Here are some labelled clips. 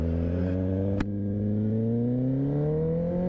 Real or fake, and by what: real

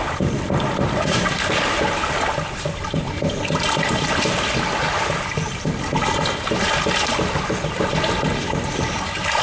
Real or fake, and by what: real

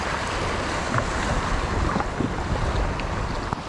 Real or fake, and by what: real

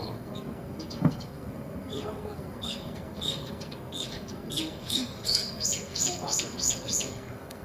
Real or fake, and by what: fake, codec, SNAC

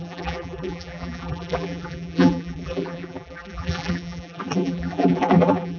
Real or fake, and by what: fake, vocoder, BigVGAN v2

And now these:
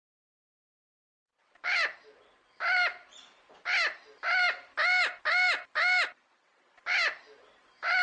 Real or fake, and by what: real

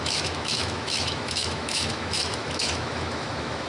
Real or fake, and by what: fake, autoencoder, DAC-VAE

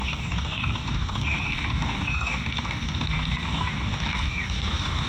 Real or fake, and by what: fake, codec, DAC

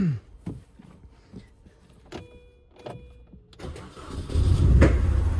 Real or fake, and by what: real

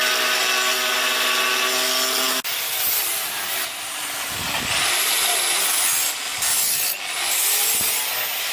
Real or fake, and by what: real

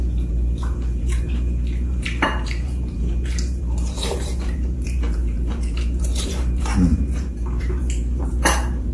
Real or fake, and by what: fake, vocoder, BigVGAN v2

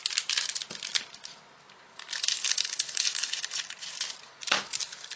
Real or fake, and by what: real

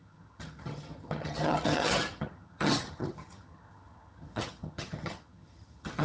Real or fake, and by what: fake, vocoder, HiFi-GAN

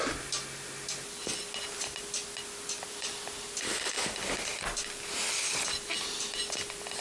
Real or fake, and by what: real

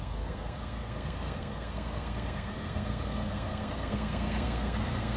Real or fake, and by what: fake, codec, SNAC